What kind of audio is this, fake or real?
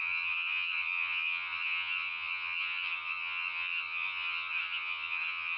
fake